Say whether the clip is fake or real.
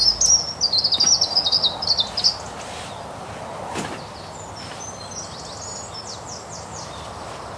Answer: real